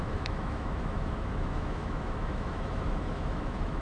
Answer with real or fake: fake